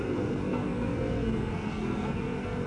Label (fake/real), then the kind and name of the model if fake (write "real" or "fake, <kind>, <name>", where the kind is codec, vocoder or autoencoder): fake, codec, SNAC